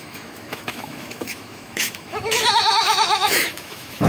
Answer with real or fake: fake